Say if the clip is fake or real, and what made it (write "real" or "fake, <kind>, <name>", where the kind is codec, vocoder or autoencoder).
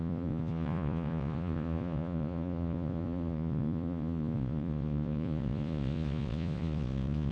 fake, vocoder, Vocos